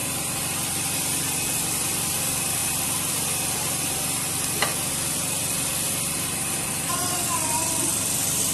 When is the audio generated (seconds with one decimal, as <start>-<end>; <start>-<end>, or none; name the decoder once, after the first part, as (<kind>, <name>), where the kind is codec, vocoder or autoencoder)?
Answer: 1.0-2.6 (vocoder, BigVGAN v2); 4.9-5.7; 6.7-8.5